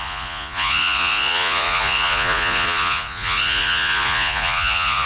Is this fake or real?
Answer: fake